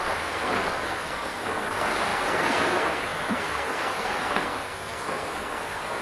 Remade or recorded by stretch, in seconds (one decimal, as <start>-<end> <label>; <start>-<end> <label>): 0.0-6.0 remade